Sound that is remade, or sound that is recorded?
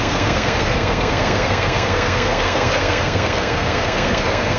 remade